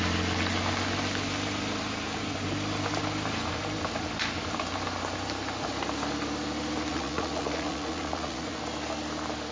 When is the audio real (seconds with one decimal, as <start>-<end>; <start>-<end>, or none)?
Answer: 0.0-6.9; 8.6-9.5

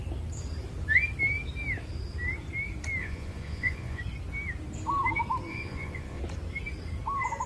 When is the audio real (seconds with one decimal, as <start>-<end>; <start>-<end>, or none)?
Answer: 0.0-3.0; 4.0-5.5; 6.2-7.5

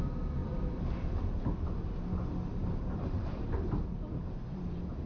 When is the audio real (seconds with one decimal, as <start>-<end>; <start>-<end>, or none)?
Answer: 0.0-0.4; 1.2-2.6; 4.6-5.1

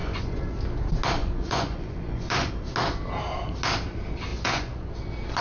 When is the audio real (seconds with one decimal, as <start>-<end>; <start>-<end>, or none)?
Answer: 0.5-1.2; 2.5-4.3; 4.9-5.4

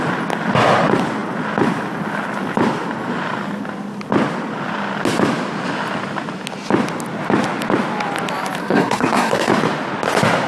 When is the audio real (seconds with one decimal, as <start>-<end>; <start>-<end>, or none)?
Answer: 0.0-8.6; 9.5-10.5

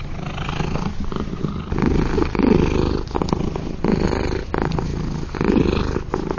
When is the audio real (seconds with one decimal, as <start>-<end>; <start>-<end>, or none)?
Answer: 0.0-6.4

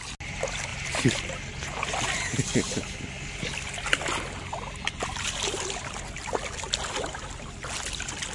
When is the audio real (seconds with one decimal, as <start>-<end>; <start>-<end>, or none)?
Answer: 0.0-0.7; 1.5-8.3